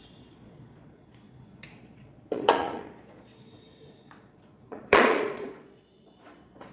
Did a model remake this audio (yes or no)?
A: yes